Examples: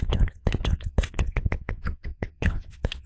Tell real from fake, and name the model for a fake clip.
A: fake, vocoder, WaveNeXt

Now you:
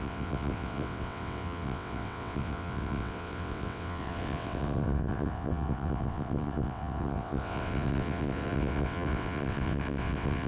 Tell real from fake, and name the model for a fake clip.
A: fake, vocoder, WaveNeXt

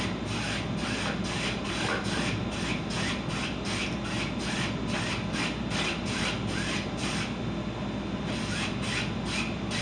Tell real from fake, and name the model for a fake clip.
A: real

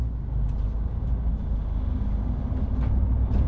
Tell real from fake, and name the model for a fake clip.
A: real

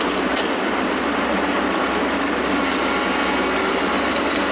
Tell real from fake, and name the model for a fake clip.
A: real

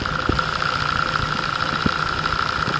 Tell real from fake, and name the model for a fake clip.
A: real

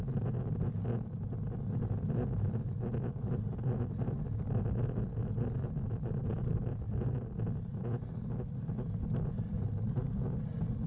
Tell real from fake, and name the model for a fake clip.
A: real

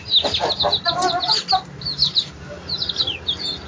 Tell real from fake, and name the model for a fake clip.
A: real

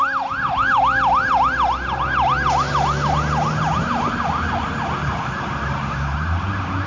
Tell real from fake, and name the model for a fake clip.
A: real